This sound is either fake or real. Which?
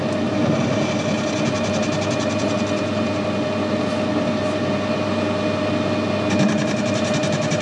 real